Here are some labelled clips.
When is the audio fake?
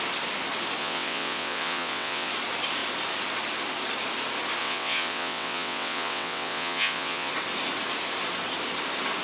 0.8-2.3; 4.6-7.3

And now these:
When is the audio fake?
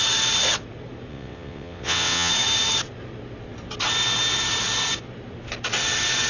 1.1-2.3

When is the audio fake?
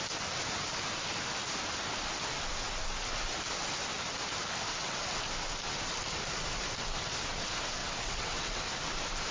4.7-5.2; 7.8-8.6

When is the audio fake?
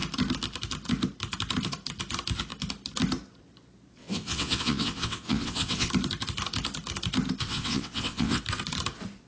4.0-5.9; 7.4-8.4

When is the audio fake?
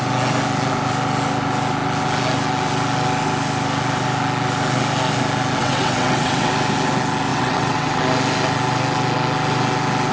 5.6-6.5; 7.3-8.0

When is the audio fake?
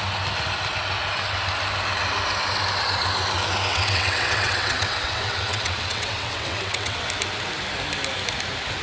3.7-7.1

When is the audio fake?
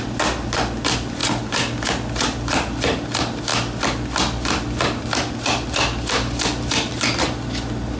none